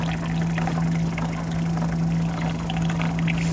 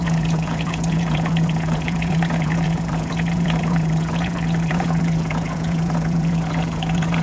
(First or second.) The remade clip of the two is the second